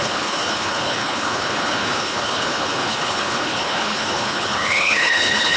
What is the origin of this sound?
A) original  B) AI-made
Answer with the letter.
B